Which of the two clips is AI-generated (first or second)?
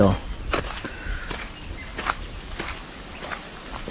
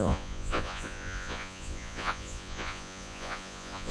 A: second